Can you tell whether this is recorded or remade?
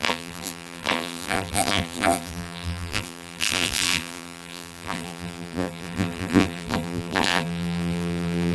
remade